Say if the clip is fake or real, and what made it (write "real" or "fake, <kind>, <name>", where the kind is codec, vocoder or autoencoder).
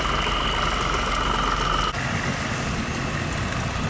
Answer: real